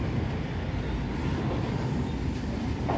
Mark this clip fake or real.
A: real